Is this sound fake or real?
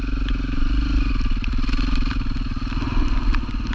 real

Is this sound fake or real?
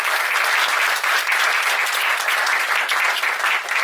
real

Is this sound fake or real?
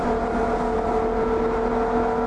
real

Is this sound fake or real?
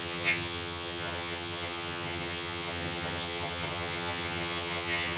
fake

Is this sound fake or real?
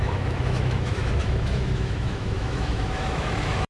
fake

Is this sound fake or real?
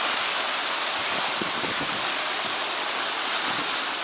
real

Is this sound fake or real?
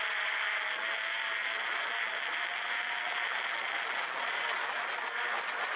real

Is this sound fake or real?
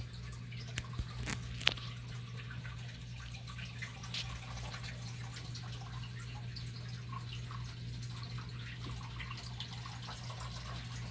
real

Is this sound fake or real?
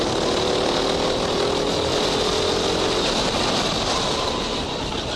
real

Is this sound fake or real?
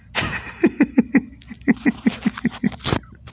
real